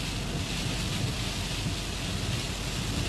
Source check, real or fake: real